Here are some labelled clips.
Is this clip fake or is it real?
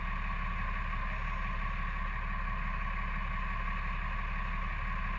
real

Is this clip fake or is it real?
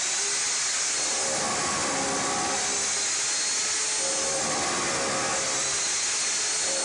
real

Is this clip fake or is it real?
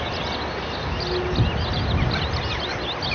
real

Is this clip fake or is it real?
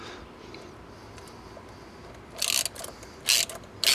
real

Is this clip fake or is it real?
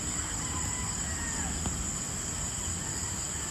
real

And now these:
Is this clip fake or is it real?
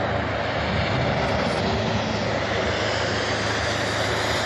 real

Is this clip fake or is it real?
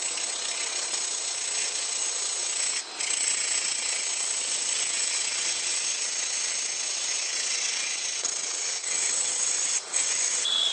fake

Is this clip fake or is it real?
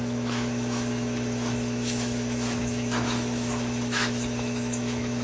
fake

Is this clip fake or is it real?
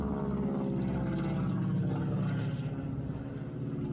real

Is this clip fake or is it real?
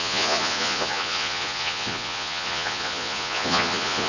fake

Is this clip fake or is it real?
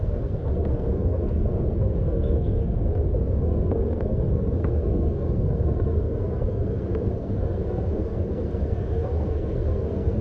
fake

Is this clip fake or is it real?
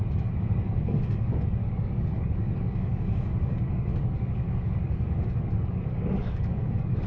fake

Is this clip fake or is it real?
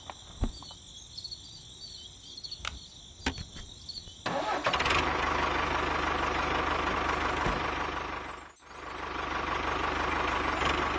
real